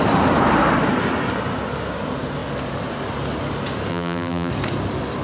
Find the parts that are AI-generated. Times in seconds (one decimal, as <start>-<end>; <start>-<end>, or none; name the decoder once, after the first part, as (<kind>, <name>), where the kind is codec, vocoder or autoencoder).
3.9-4.5 (vocoder, BigVGAN v2)